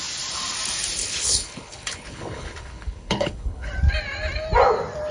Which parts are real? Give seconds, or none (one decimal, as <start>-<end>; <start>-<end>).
0.0-1.0; 3.7-5.1